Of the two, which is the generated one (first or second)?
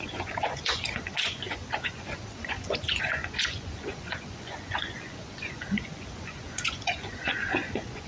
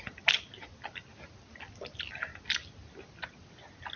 first